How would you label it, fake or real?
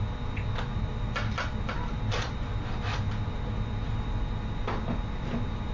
real